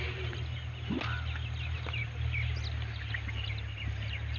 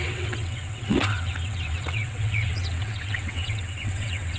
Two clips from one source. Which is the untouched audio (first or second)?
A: first